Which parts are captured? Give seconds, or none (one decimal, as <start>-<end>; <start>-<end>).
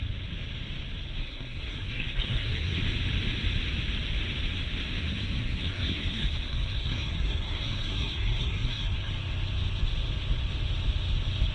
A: 0.0-1.2; 2.8-5.0; 9.1-11.5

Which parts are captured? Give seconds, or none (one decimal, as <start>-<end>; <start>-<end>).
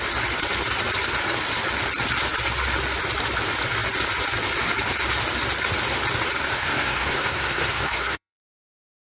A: 0.0-6.4; 8.5-9.0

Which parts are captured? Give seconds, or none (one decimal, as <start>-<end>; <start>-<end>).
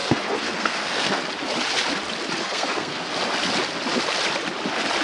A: 1.2-2.4; 3.1-5.0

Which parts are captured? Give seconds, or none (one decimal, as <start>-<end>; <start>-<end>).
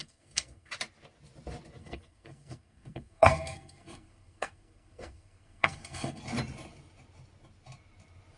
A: 0.7-1.8; 6.2-8.4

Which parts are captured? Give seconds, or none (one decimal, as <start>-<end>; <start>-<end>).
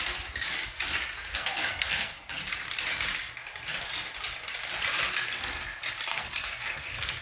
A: 0.0-1.3; 2.4-6.1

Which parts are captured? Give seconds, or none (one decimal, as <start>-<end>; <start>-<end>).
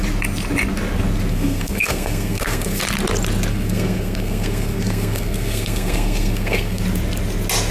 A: 0.0-1.3; 2.8-3.5; 6.8-7.7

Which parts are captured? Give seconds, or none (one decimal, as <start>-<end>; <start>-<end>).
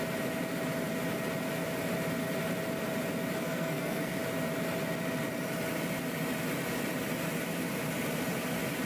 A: 0.0-3.4; 4.2-8.8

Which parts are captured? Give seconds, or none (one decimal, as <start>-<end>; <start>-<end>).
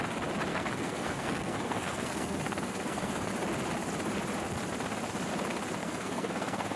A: 0.0-0.5; 3.3-5.8